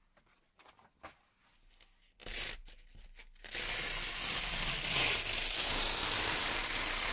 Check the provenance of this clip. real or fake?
real